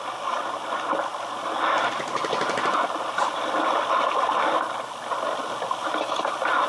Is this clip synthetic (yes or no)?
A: no